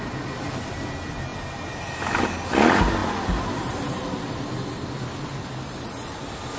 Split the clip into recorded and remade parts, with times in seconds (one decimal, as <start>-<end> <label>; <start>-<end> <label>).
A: 0.0-6.6 recorded